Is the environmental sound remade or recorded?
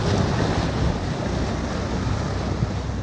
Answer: recorded